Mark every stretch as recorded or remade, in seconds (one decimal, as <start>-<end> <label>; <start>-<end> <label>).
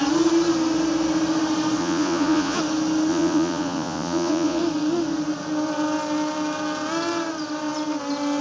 0.0-1.8 recorded; 1.8-2.6 remade; 2.6-3.1 recorded; 3.1-4.6 remade; 4.6-8.4 recorded